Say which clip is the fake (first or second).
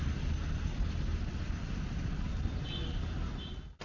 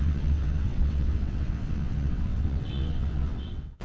second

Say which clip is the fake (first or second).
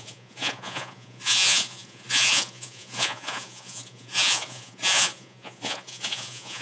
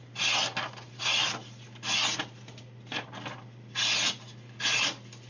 first